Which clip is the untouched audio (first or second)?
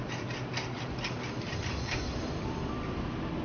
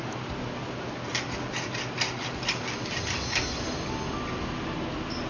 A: second